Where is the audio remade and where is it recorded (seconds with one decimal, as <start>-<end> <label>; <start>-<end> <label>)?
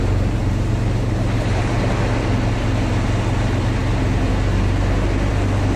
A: 0.0-5.8 recorded